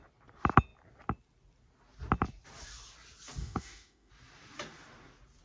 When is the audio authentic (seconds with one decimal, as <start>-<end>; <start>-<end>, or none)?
0.0-3.4; 4.1-5.4